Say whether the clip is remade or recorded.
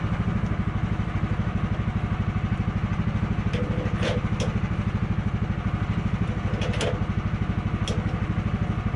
recorded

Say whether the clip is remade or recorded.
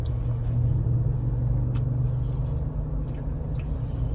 recorded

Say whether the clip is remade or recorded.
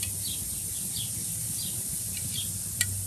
recorded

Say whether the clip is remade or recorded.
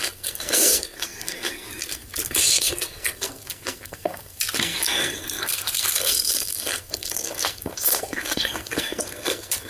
remade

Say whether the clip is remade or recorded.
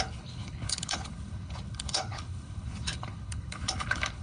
remade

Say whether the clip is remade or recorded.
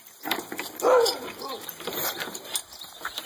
remade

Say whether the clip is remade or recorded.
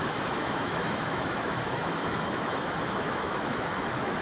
remade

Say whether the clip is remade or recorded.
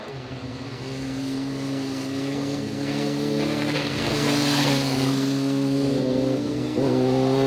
remade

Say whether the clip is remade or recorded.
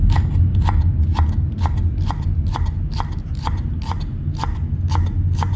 recorded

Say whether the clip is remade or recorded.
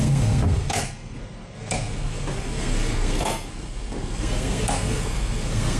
remade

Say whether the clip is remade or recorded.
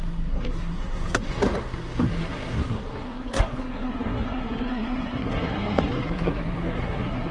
remade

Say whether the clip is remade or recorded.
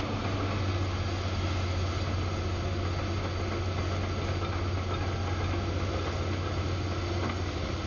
recorded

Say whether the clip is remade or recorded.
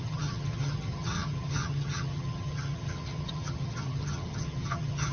remade